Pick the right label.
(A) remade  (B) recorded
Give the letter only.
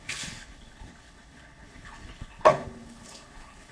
A